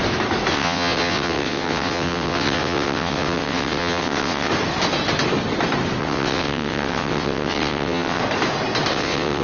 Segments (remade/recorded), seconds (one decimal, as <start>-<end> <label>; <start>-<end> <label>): 0.0-0.5 recorded; 0.5-4.5 remade; 4.5-6.0 recorded; 6.0-8.2 remade; 8.2-8.9 recorded; 8.9-9.4 remade